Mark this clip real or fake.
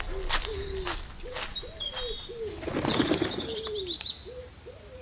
real